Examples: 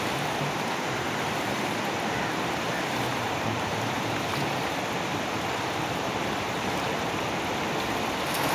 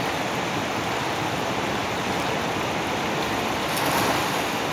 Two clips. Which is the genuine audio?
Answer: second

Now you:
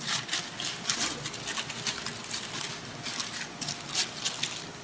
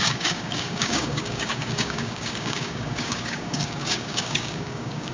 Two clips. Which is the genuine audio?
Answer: first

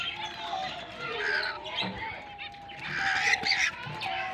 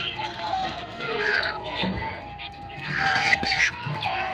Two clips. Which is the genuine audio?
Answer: first